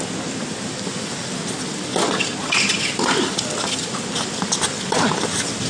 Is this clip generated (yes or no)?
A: no